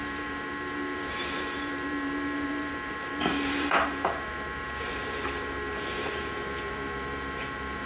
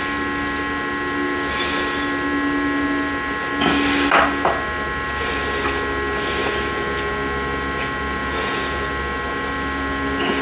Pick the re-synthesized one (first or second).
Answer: first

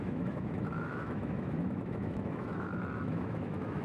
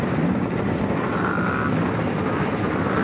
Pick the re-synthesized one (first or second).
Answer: first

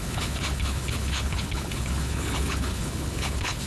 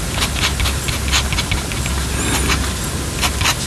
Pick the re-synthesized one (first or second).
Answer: first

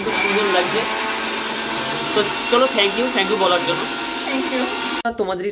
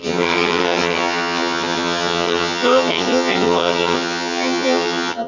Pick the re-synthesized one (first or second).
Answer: second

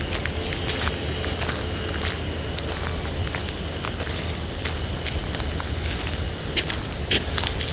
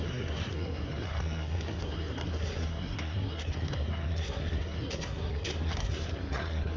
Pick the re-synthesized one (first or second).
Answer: second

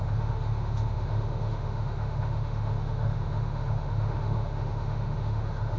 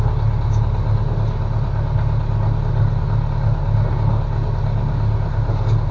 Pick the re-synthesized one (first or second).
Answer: first